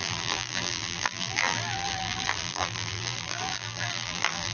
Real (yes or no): no